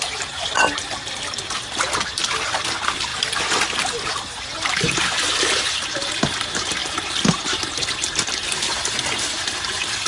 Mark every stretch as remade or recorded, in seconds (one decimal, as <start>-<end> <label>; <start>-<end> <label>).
0.0-10.1 recorded